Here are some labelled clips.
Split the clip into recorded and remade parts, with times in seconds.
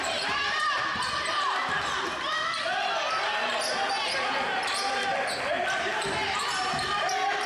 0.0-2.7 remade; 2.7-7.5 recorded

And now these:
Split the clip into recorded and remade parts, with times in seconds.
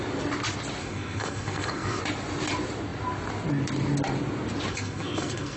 0.0-0.8 recorded; 0.8-2.0 remade; 2.0-4.7 recorded; 4.7-5.6 remade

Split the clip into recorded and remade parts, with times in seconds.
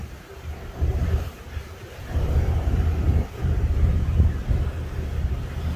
0.0-0.9 recorded; 0.9-4.4 remade; 4.4-5.8 recorded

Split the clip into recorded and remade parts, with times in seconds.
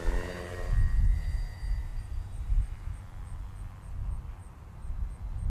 0.0-1.9 recorded; 1.9-3.0 remade; 3.0-4.4 recorded; 4.4-5.0 remade; 5.0-5.5 recorded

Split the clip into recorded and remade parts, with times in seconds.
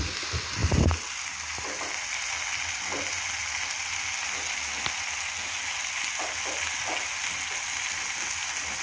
0.0-8.8 recorded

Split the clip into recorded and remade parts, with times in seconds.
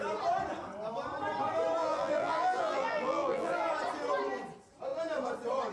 0.0-1.8 recorded; 1.8-3.7 remade; 3.7-5.7 recorded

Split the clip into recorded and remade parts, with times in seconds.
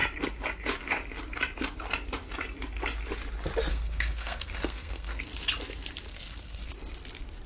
0.0-3.7 recorded; 3.7-5.2 remade; 5.2-6.1 recorded; 6.1-6.7 remade; 6.7-7.5 recorded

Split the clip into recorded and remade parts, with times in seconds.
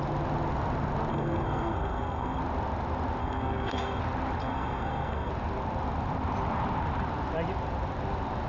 0.0-1.1 recorded; 1.1-2.4 remade; 2.4-3.2 recorded; 3.2-4.0 remade; 4.0-4.4 recorded; 4.4-5.3 remade; 5.3-8.5 recorded